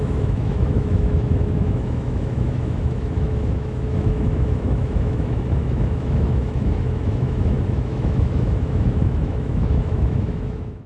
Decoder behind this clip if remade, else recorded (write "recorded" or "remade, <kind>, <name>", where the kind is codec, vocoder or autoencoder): remade, autoencoder, DAC-VAE